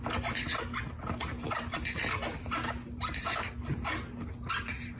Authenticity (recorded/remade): recorded